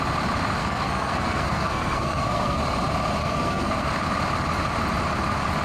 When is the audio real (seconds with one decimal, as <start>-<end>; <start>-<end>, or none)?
0.0-0.6; 2.6-3.2; 3.9-5.6